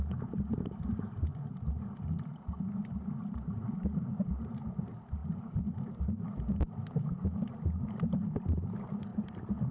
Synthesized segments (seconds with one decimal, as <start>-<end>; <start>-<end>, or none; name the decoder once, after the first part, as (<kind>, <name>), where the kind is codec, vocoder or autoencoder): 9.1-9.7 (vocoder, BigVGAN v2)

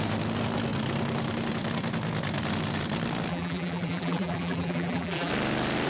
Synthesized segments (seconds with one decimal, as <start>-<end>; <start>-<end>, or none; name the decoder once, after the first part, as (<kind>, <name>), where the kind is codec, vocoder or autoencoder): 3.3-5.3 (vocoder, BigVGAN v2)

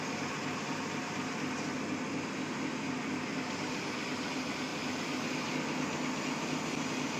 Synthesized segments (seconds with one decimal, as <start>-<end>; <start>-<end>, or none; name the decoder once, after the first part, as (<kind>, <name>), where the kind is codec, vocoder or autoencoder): 4.7-5.5 (vocoder, BigVGAN v2)

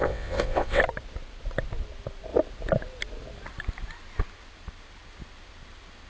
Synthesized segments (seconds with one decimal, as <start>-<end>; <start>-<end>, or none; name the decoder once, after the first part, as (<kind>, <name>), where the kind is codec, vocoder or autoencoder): 0.0-0.8 (vocoder, WaveNeXt)